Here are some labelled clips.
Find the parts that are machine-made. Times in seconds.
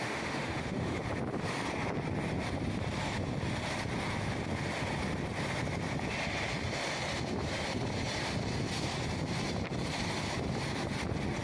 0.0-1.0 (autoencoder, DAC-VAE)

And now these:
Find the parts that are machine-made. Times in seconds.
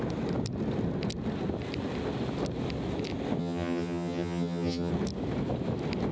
3.4-4.9 (vocoder, HiFi-GAN)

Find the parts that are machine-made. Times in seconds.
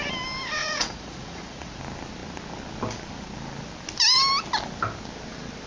0.6-1.8 (vocoder, Vocos)